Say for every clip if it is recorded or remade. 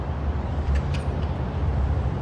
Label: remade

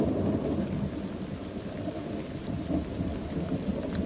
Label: recorded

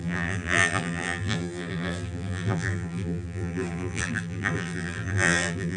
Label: remade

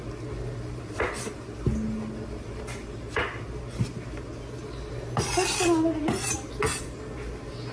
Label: recorded